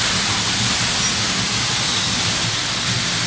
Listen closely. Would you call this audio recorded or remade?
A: recorded